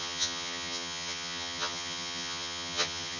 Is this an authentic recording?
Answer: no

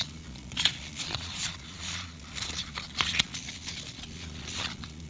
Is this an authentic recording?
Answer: no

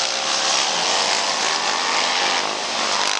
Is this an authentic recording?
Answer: yes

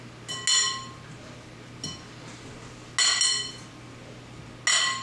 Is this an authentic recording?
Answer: yes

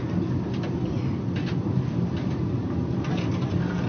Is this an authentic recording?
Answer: yes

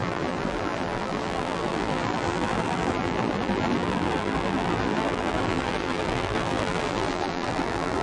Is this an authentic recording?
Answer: no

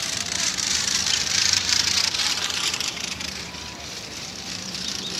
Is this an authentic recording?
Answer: no